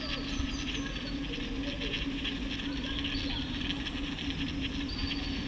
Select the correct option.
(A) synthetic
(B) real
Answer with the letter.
B